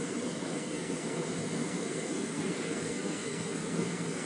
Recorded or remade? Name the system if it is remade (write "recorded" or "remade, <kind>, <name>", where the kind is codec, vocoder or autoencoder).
remade, codec, SNAC